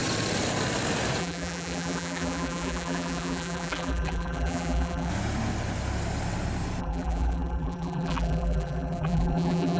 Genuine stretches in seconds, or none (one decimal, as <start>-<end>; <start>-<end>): 0.0-1.2; 5.1-6.8